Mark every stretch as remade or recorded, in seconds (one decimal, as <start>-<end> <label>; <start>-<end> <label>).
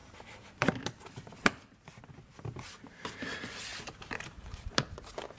0.0-3.7 recorded; 3.7-4.7 remade; 4.7-5.4 recorded